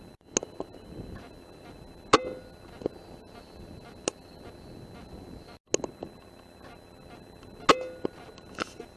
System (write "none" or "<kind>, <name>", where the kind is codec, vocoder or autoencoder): none